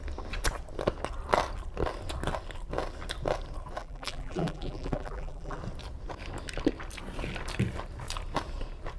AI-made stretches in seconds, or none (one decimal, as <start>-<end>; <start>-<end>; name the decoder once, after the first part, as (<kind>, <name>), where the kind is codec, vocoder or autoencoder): 3.8-5.6 (vocoder, BigVGAN v2)